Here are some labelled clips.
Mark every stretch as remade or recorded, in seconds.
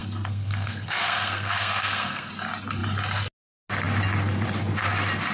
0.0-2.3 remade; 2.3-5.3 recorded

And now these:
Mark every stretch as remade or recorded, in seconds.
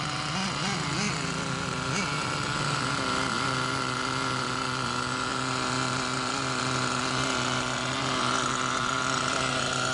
0.0-9.9 recorded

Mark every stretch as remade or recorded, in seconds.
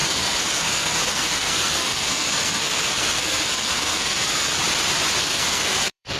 0.0-4.6 remade; 4.6-5.2 recorded; 5.2-6.2 remade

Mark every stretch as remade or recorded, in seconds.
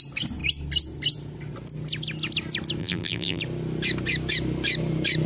0.0-2.8 recorded; 2.8-3.4 remade; 3.4-5.3 recorded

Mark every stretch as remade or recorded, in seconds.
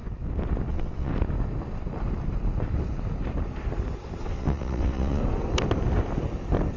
0.0-0.7 recorded; 0.7-1.1 remade; 1.1-4.2 recorded; 4.2-5.2 remade; 5.2-6.8 recorded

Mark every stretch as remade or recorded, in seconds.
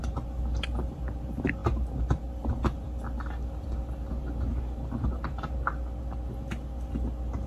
0.0-7.5 recorded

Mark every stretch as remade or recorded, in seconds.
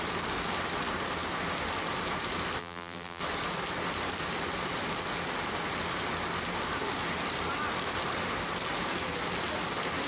0.0-2.6 recorded; 2.6-3.2 remade; 3.2-10.1 recorded